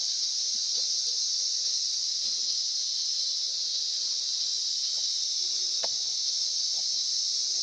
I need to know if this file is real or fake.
real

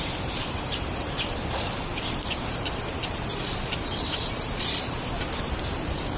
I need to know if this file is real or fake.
fake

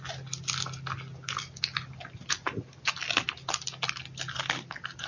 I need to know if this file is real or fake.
real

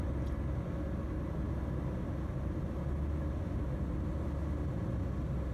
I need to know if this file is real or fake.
real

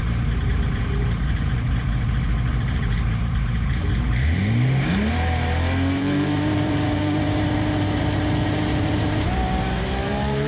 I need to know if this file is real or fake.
fake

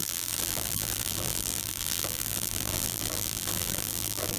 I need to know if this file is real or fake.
fake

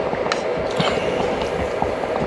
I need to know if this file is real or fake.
real